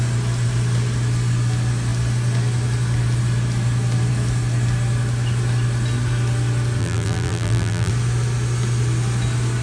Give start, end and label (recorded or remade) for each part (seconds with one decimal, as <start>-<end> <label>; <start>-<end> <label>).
0.0-6.8 recorded; 6.8-7.9 remade; 7.9-9.6 recorded